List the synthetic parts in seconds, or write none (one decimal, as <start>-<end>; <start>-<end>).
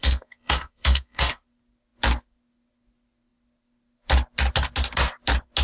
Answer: 0.0-1.4